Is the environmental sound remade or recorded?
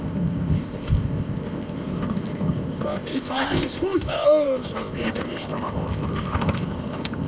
remade